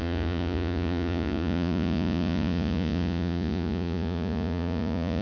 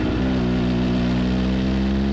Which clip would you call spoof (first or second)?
first